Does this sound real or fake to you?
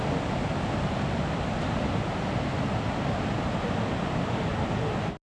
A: real